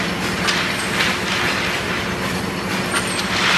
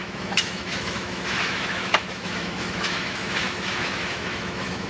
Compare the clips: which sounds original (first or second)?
first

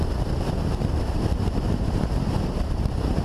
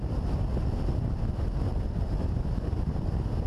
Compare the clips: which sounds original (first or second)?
second